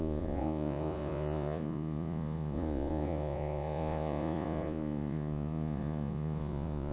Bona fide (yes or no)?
no